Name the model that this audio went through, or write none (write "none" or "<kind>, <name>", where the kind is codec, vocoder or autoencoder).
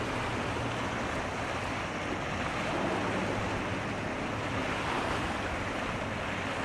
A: none